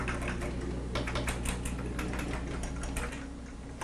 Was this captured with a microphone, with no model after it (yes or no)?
yes